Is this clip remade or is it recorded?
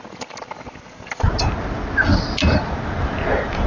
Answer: recorded